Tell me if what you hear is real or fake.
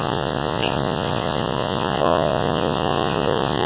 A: fake